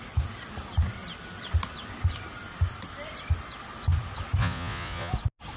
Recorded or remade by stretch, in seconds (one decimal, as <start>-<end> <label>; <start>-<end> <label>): 0.0-4.4 recorded; 4.4-5.1 remade; 5.1-5.6 recorded